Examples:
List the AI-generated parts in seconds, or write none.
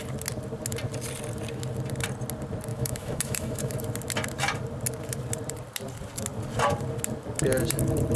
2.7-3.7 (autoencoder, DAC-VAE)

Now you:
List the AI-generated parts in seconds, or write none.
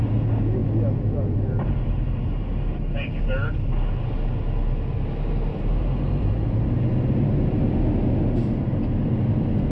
none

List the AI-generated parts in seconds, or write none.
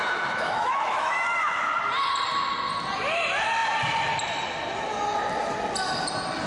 0.0-1.8 (autoencoder, DAC-VAE)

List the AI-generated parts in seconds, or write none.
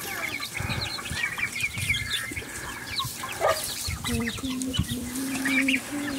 0.0-6.2 (vocoder, BigVGAN v2)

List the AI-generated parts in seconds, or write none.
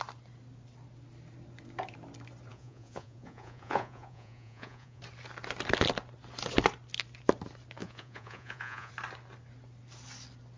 2.5-5.0 (vocoder, Vocos); 7.8-8.9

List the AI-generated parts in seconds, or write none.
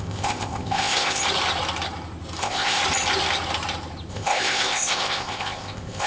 0.0-1.2 (codec, ZipCodec); 2.4-2.8; 4.1-6.1